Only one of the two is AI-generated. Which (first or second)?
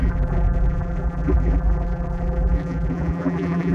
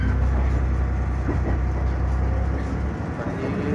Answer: first